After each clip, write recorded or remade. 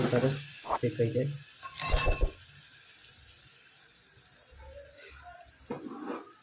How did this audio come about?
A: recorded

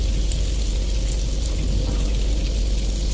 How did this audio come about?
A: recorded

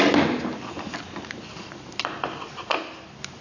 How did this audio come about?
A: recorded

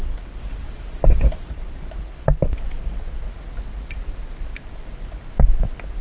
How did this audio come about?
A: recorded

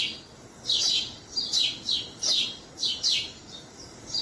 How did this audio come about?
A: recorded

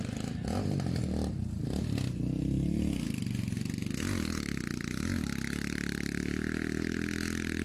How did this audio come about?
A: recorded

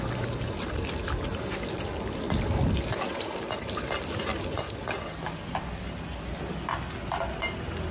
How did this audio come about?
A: recorded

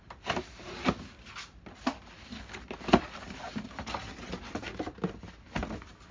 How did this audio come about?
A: recorded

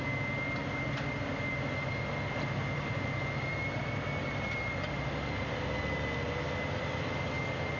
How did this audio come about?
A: recorded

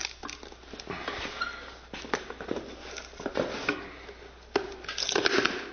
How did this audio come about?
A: recorded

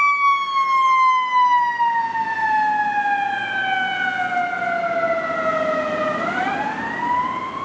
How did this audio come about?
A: recorded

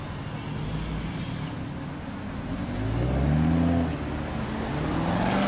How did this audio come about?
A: recorded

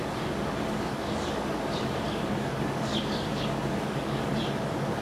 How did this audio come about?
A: remade